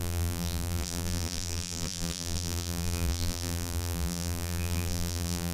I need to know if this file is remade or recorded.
remade